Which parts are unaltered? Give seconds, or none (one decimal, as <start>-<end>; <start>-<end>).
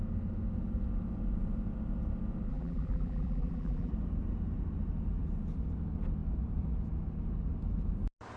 0.0-2.5; 3.9-8.4